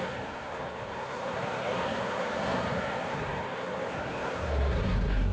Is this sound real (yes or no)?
no